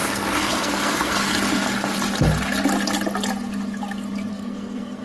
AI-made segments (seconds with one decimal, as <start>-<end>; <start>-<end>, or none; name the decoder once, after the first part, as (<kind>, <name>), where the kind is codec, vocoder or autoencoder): 0.0-1.3 (codec, SNAC); 4.3-5.0

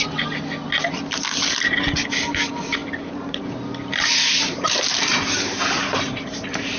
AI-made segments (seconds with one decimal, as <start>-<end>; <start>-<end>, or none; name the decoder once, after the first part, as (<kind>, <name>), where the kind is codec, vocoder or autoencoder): 2.8-6.8 (vocoder, BigVGAN v2)

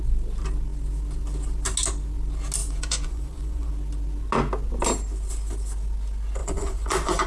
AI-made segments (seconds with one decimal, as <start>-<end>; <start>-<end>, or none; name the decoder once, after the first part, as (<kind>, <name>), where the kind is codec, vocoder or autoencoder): 2.6-3.7 (vocoder, Vocos); 6.4-7.3

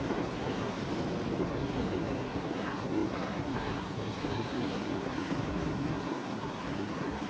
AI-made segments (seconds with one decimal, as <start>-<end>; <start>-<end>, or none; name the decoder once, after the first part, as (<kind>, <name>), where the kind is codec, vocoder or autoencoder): 0.0-0.8 (codec, SNAC); 1.4-7.3